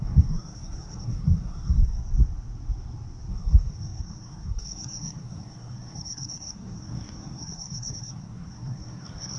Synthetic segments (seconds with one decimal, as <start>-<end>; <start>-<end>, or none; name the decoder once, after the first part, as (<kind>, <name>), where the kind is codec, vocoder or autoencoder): 0.0-2.0 (codec, SNAC); 3.3-9.4